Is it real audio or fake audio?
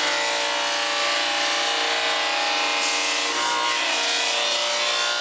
real